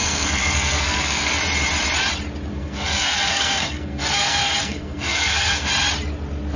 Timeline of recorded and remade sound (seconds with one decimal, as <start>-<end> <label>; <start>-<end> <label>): 0.0-1.4 remade; 1.4-2.5 recorded; 2.5-5.7 remade; 5.7-6.6 recorded